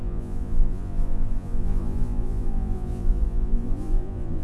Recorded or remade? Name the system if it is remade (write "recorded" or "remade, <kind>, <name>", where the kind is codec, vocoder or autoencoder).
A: remade, vocoder, Vocos